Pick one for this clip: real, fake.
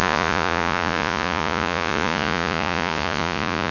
fake